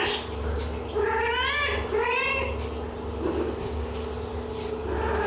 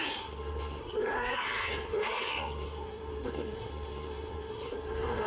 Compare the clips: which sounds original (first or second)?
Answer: first